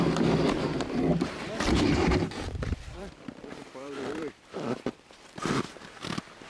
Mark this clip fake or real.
fake